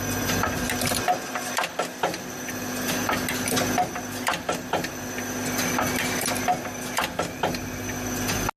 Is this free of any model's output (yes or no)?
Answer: yes